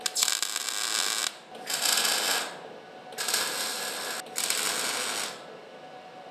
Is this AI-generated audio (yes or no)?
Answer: no